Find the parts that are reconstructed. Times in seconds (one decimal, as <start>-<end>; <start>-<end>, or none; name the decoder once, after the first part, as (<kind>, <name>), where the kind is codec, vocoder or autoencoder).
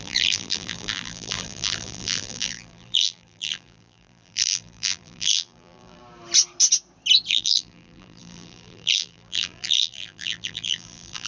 0.0-6.0 (vocoder, BigVGAN v2); 7.3-11.3